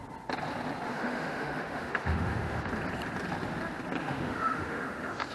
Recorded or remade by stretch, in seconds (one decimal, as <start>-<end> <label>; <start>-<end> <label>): 0.0-0.9 recorded; 0.9-2.7 remade; 2.7-4.0 recorded; 4.0-5.3 remade